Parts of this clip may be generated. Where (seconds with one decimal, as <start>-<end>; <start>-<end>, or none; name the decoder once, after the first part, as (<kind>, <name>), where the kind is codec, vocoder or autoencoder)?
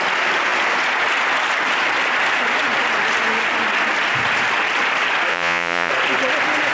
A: 5.3-5.9 (vocoder, Vocos)